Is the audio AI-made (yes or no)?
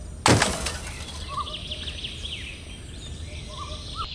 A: no